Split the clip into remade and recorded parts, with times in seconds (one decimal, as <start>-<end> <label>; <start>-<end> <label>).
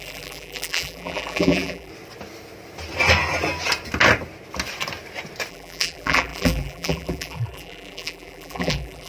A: 0.0-1.9 remade; 1.9-5.5 recorded; 5.5-9.1 remade